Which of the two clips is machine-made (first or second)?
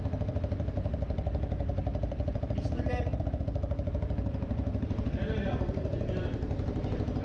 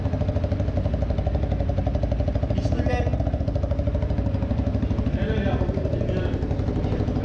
first